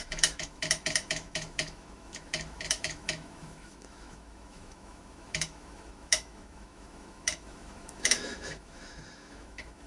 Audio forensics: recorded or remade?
remade